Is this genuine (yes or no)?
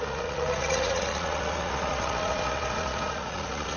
no